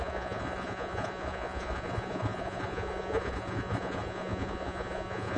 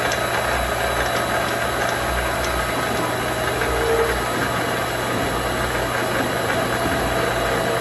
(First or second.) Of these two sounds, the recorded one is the second